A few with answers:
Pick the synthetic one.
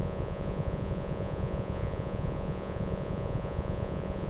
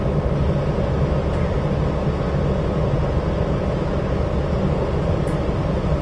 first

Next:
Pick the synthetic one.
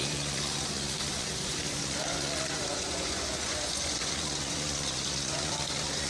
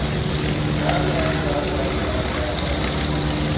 first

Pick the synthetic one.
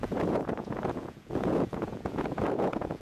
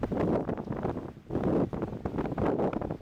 first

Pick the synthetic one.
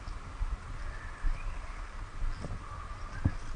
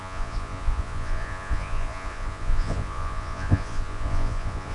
second